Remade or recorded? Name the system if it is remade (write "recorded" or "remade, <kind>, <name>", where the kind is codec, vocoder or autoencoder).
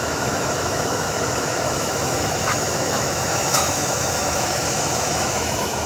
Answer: remade, autoencoder, DAC-VAE